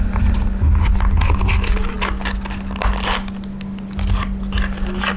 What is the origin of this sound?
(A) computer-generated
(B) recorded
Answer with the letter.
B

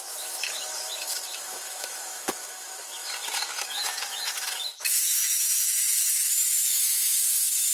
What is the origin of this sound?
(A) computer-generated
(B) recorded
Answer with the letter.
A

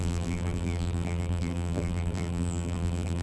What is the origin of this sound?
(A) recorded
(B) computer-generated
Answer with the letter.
B